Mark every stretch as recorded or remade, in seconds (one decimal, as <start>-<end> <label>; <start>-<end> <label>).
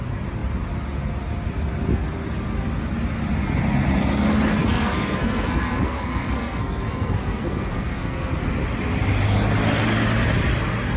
0.0-4.6 recorded; 4.6-8.3 remade; 8.3-11.0 recorded